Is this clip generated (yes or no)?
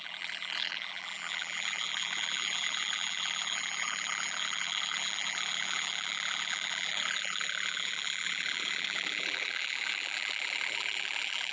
yes